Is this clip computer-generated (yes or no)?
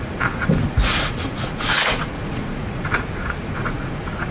yes